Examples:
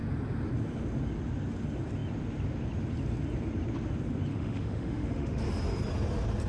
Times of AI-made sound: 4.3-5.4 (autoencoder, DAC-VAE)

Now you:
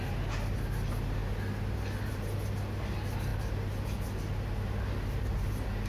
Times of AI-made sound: none

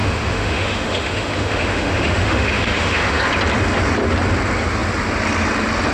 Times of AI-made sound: 0.0-3.2 (autoencoder, DAC-VAE)